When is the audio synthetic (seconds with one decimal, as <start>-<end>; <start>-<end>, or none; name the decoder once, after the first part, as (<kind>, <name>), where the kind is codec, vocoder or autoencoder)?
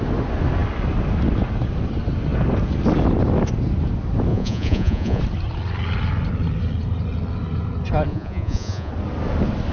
4.3-5.2 (vocoder, Vocos); 8.1-8.9